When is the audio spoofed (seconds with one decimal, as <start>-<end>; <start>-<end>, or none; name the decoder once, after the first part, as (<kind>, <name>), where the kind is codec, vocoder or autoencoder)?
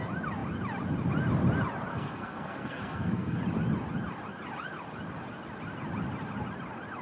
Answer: 1.9-3.4 (codec, SNAC)